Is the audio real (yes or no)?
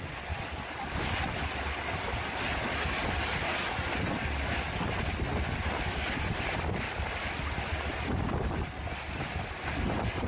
yes